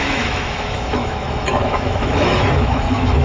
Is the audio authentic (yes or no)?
no